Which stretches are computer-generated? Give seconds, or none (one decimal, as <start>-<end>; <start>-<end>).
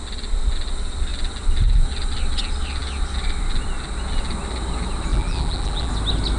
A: 5.1-5.9